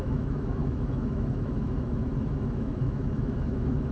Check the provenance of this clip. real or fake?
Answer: fake